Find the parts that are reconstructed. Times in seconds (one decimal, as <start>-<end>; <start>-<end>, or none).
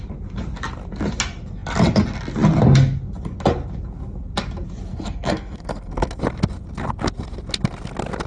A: 4.9-6.2